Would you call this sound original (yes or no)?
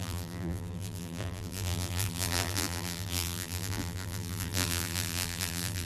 no